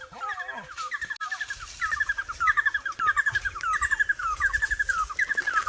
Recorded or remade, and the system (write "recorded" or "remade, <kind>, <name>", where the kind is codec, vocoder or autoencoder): recorded